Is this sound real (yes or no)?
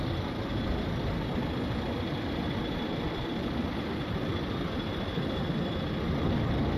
yes